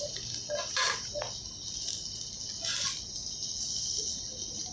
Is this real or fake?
real